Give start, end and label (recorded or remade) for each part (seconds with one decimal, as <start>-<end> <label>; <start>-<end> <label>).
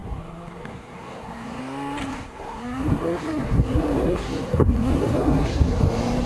0.0-1.6 remade; 1.6-2.0 recorded; 2.0-5.8 remade; 5.8-6.3 recorded